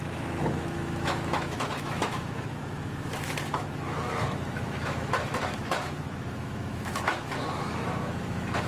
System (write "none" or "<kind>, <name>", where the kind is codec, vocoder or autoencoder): autoencoder, DAC-VAE